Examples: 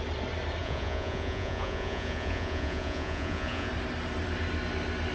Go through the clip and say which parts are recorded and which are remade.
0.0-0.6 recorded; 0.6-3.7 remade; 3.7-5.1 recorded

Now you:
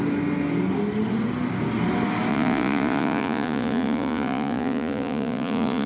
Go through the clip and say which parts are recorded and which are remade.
0.0-2.3 recorded; 2.3-5.9 remade

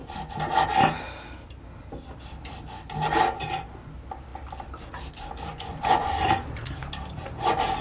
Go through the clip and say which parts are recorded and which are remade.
0.0-5.5 recorded; 5.5-6.1 remade; 6.1-7.8 recorded

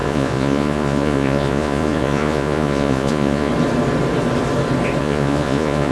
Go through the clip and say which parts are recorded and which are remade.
0.0-3.5 remade; 3.5-5.0 recorded; 5.0-5.9 remade

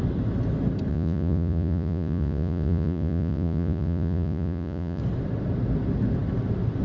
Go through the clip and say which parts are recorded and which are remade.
0.0-0.9 recorded; 0.9-5.0 remade; 5.0-6.8 recorded